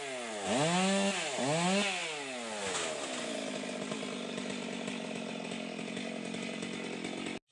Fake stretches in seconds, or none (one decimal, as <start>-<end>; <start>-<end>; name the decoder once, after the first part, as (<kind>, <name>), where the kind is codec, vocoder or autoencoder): none